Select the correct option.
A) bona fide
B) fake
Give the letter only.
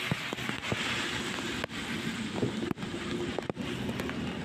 A